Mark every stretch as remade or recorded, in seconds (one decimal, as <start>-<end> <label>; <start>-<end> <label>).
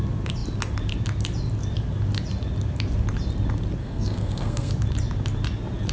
0.0-3.8 recorded; 3.8-4.7 remade; 4.7-5.9 recorded